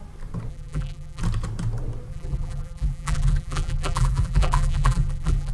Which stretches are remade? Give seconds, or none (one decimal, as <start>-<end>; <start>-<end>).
0.5-1.2; 2.1-5.5